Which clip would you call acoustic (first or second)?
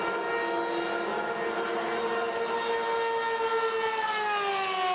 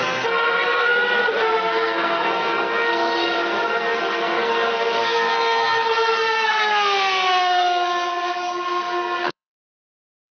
first